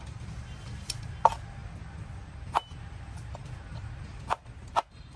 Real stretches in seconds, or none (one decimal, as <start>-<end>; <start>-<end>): 0.0-5.2